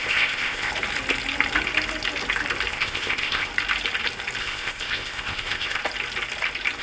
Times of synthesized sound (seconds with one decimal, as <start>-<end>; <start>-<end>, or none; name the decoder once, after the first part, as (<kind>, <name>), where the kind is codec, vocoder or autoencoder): 0.0-0.7 (codec, ZipCodec); 2.7-3.5; 4.4-5.8